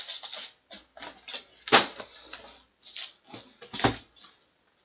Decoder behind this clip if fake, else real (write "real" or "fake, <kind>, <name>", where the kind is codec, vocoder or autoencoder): real